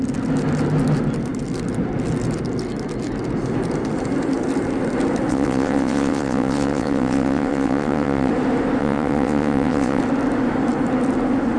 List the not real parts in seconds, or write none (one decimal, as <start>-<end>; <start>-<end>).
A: 5.3-8.3; 8.8-10.0